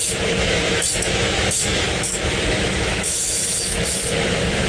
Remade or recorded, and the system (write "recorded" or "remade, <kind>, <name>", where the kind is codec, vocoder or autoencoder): remade, autoencoder, DAC-VAE